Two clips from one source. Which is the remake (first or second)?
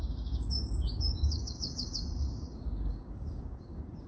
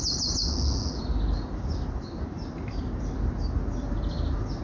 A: first